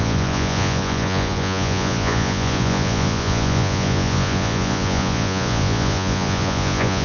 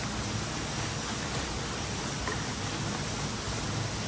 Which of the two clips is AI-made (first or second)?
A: first